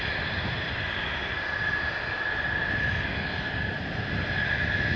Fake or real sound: real